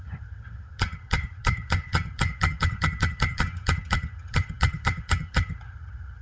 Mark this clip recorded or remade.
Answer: remade